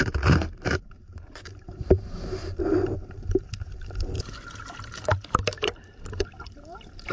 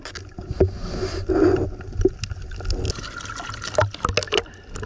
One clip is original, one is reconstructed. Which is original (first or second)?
second